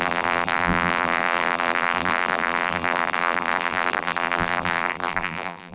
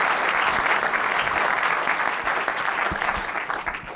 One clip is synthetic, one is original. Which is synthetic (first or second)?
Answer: first